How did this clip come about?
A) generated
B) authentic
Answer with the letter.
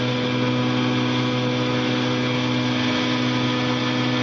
B